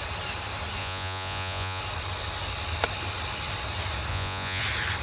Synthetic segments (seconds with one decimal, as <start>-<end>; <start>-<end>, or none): 0.8-1.8; 4.1-4.6